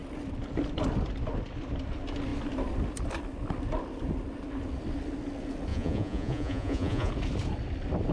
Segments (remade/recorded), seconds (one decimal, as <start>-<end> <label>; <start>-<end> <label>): 0.0-5.7 recorded; 5.7-7.1 remade; 7.1-8.1 recorded